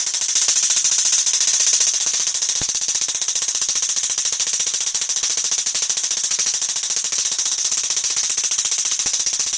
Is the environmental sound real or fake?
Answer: fake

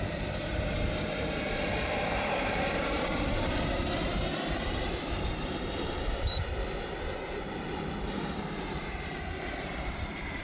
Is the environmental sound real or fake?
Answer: fake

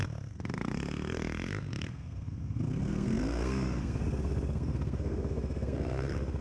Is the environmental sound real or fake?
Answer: fake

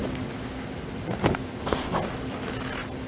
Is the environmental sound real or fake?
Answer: real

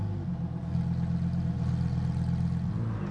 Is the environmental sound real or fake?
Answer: real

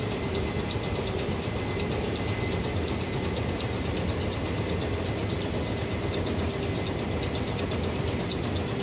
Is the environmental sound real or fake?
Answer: real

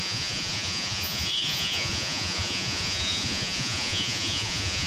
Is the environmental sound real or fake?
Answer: fake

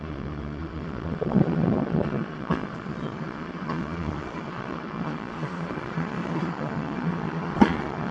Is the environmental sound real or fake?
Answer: fake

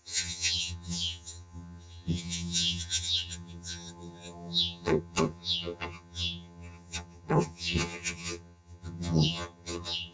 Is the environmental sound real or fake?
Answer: fake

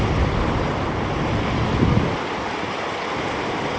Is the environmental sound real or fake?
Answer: real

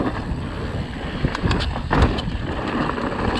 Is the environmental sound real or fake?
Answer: real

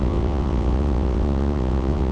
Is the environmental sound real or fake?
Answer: fake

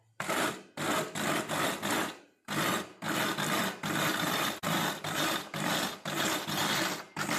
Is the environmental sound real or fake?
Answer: real